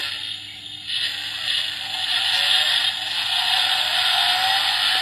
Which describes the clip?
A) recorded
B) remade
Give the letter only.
A